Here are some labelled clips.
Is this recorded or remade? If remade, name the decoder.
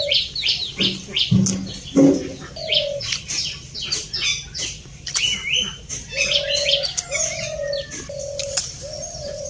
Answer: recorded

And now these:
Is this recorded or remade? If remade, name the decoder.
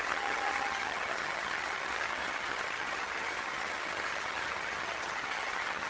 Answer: remade, vocoder, HiFi-GAN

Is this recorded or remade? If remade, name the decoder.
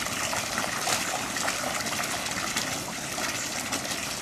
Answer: recorded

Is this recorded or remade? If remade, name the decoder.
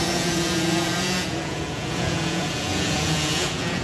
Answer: remade, vocoder, Vocos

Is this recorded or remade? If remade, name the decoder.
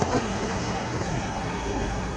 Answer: remade, codec, SNAC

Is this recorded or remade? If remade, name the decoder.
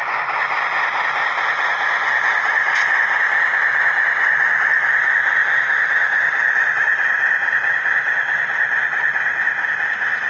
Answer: recorded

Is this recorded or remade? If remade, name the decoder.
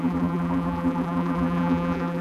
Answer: remade, vocoder, BigVGAN v2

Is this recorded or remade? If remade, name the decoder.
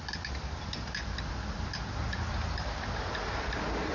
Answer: recorded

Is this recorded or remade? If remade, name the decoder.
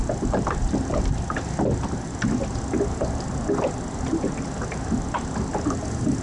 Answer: recorded